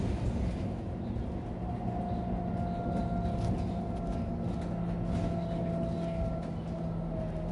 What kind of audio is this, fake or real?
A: real